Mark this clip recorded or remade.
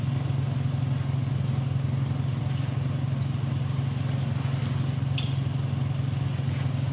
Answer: recorded